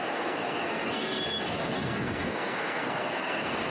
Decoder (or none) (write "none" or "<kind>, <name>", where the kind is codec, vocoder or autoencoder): codec, SNAC